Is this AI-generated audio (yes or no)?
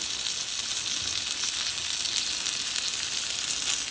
no